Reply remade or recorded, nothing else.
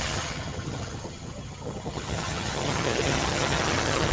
remade